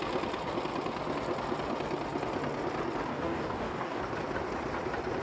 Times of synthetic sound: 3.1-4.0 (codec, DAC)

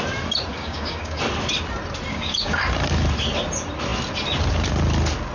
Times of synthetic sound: 0.5-1.2 (codec, DAC); 2.1-2.6

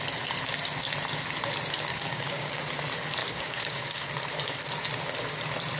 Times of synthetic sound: 1.9-2.6 (codec, DAC); 3.2-4.1

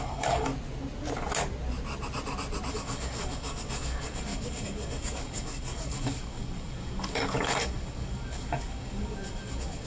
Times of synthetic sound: 0.0-0.5 (codec, DAC); 2.7-9.9

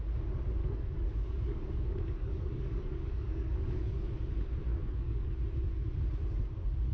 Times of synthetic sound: 0.6-4.1 (codec, DAC); 4.7-5.3